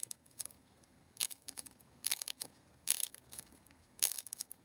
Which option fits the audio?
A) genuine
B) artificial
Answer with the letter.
B